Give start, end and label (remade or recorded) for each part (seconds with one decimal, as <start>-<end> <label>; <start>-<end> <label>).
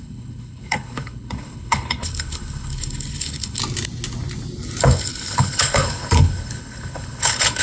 0.0-3.6 remade; 3.6-4.8 recorded; 4.8-7.6 remade